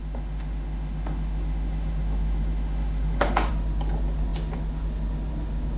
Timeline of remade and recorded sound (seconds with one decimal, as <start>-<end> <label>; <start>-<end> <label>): 0.0-3.5 remade; 3.5-5.8 recorded